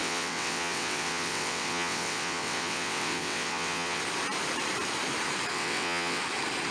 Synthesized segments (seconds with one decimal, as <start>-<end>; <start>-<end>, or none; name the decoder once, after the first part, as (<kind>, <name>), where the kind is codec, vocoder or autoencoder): 0.0-4.0 (vocoder, WaveNeXt); 5.5-6.2